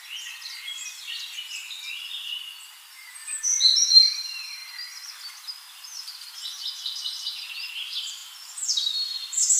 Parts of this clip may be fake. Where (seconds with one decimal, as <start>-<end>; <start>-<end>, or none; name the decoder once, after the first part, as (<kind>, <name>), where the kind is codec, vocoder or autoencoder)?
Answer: 0.0-2.3 (vocoder, BigVGAN v2); 3.1-4.6; 7.7-9.6